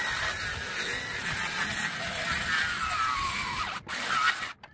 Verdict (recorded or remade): recorded